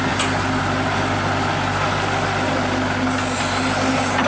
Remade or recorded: recorded